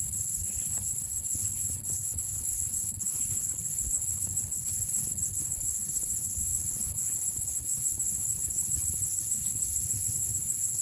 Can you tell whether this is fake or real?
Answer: fake